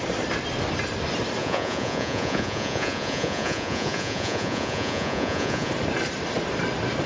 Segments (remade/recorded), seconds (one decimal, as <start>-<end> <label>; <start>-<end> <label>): 0.0-1.4 recorded; 1.4-5.7 remade; 5.7-7.1 recorded